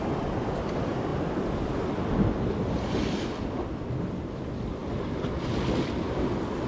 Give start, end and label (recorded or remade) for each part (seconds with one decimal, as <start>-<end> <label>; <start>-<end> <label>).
0.0-6.7 recorded